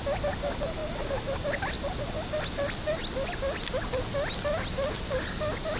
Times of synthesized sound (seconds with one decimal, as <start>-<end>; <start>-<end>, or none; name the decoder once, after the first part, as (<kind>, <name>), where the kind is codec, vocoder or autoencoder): none